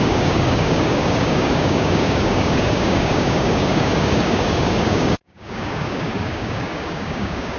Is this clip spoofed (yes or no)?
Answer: yes